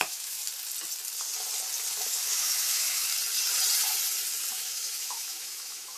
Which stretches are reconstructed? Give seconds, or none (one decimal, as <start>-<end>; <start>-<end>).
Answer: 0.0-0.4; 1.9-3.1; 4.5-6.0